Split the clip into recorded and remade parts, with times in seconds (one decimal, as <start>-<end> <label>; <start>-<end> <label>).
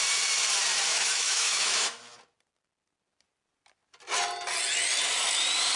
0.0-0.9 recorded; 0.9-2.0 remade; 2.0-5.8 recorded